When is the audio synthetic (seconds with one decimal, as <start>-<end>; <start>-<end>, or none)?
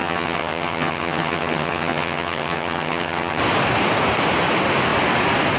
0.0-3.4